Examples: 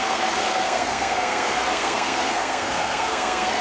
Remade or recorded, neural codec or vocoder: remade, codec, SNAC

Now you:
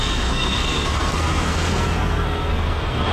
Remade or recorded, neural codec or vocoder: remade, codec, SNAC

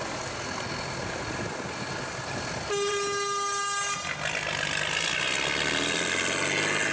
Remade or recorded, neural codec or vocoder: recorded